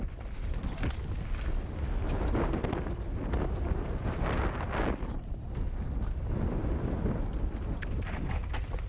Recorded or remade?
recorded